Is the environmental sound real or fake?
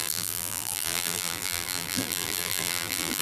fake